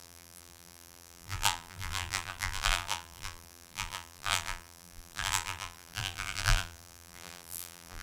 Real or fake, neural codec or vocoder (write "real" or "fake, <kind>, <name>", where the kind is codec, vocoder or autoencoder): fake, vocoder, BigVGAN v2